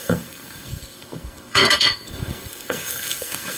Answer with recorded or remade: remade